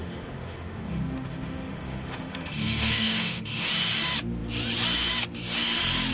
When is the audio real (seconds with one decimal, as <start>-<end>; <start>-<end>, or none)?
3.7-6.1

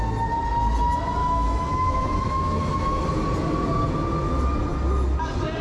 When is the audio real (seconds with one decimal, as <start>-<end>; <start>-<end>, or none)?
0.0-1.2; 3.0-5.6

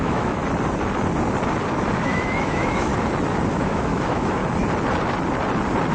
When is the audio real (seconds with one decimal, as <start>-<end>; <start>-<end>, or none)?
0.4-2.0; 2.9-3.5; 4.4-5.9

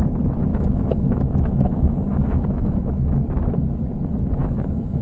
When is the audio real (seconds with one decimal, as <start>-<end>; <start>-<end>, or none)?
0.0-0.5; 3.2-4.4

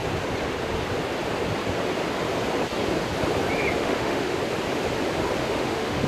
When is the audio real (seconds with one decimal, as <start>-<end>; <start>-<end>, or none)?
0.0-3.8; 4.4-5.4

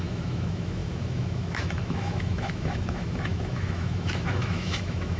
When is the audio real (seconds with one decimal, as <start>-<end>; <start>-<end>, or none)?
none